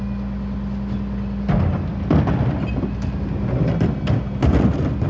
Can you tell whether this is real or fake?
real